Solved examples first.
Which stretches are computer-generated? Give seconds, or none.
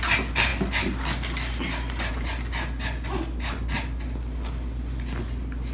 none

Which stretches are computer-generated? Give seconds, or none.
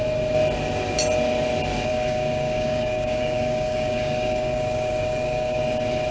1.9-5.6